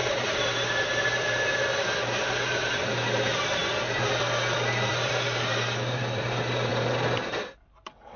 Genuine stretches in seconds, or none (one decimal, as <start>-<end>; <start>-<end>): 3.6-4.9